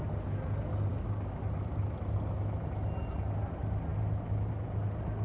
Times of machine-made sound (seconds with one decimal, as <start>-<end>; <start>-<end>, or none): 0.9-1.4